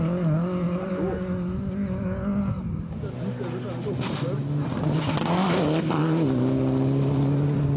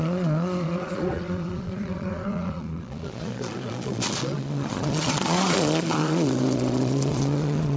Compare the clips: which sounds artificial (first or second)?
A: second